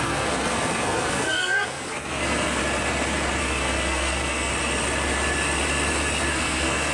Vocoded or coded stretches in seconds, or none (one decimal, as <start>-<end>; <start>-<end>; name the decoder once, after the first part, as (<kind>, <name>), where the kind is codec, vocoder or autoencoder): 0.0-2.6 (codec, SNAC); 3.4-4.5; 6.3-6.9